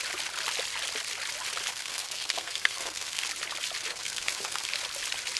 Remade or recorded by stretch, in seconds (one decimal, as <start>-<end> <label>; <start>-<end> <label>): 0.0-1.7 recorded; 1.7-3.2 remade; 3.2-3.9 recorded; 3.9-4.7 remade; 4.7-5.4 recorded